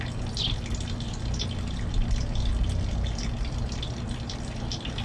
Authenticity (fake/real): real